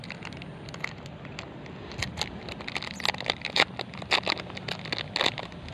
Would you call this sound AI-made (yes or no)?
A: no